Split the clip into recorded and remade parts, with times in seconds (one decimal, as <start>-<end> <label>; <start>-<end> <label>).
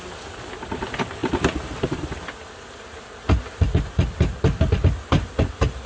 0.0-5.9 recorded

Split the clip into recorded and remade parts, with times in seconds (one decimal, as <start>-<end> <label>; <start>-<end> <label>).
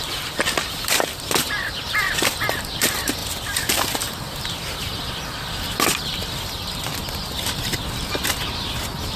0.0-9.2 recorded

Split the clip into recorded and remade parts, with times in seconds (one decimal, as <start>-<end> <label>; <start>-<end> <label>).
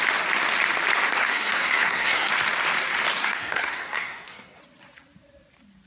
0.0-1.2 recorded; 1.2-2.3 remade; 2.3-3.2 recorded; 3.2-4.6 remade; 4.6-5.9 recorded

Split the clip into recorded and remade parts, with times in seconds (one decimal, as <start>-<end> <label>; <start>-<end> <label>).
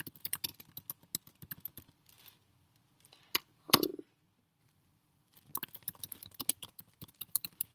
0.0-0.5 remade; 0.5-1.7 recorded; 1.7-3.9 remade; 3.9-4.6 recorded; 4.6-5.3 remade; 5.3-6.6 recorded; 6.6-7.7 remade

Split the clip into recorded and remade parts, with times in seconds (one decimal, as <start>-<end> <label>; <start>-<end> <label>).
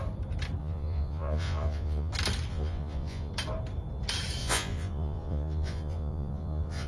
0.0-0.6 recorded; 0.6-2.1 remade; 2.1-2.5 recorded; 2.5-3.3 remade; 3.3-4.4 recorded; 4.4-6.9 remade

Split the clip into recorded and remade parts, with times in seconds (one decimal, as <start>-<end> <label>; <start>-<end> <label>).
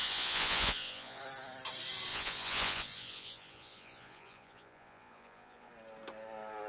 0.0-1.2 remade; 1.2-2.1 recorded; 2.1-5.7 remade; 5.7-6.7 recorded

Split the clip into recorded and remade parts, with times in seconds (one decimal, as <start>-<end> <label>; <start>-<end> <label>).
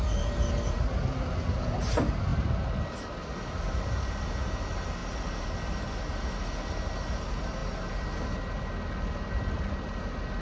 0.0-10.4 recorded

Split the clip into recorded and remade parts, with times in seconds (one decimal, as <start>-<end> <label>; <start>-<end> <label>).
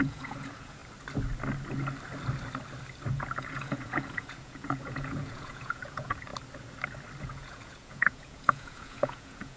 0.0-0.8 remade; 0.8-3.1 recorded; 3.1-6.3 remade; 6.3-7.2 recorded; 7.2-9.6 remade